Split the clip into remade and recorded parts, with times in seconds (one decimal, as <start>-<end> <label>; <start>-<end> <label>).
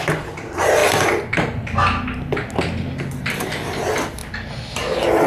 0.0-5.3 recorded